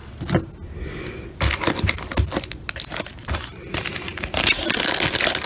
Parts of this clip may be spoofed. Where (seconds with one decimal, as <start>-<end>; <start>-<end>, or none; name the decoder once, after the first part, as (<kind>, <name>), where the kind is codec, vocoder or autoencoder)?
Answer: 3.2-4.6 (vocoder, BigVGAN v2)